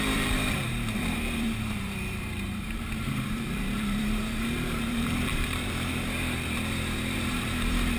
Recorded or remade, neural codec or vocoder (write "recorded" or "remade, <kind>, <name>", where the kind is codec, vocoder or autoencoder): remade, vocoder, BigVGAN v2